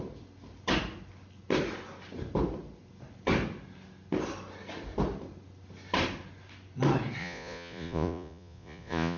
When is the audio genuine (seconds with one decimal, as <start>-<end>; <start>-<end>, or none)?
0.0-7.2